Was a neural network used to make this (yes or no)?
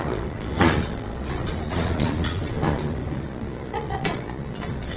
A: yes